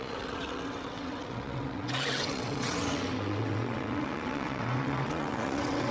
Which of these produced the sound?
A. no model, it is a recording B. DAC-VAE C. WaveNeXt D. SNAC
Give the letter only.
C